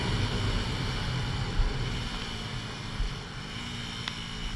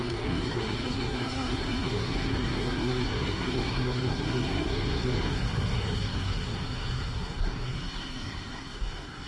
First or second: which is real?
first